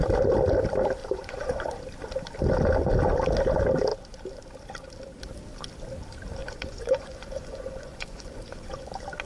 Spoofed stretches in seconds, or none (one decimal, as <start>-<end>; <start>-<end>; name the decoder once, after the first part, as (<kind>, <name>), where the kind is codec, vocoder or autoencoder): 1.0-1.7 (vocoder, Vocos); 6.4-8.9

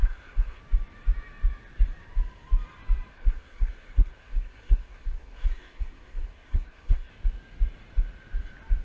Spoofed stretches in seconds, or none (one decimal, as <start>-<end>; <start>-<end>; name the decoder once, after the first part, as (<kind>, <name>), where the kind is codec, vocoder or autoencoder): 0.0-0.6 (codec, SNAC); 3.1-7.1

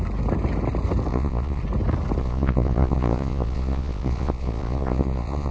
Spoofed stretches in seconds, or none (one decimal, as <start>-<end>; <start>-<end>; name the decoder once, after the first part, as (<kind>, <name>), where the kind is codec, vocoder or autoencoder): 1.1-1.6 (vocoder, Vocos); 2.2-5.5

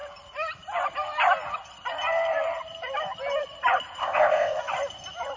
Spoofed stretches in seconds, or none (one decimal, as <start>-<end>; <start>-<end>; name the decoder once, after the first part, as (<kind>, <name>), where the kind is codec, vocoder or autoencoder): 4.0-4.6 (codec, ZipCodec)

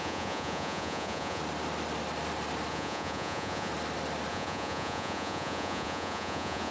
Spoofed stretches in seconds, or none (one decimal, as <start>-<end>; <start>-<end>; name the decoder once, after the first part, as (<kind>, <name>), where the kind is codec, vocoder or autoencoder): 0.0-1.4 (vocoder, Vocos); 2.7-3.7; 4.3-6.7

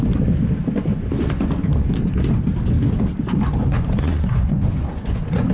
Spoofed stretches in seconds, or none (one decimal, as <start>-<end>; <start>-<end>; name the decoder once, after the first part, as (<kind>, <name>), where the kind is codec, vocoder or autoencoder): 0.9-1.5 (vocoder, Vocos); 3.6-5.5

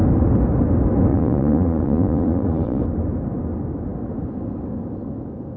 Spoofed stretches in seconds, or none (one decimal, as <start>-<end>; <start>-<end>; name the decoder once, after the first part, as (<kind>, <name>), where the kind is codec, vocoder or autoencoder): 1.1-2.8 (vocoder, Vocos)

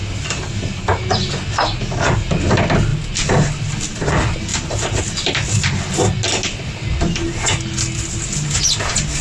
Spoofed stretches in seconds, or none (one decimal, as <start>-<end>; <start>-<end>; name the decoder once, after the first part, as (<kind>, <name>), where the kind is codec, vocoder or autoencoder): 4.5-5.0 (vocoder, BigVGAN v2)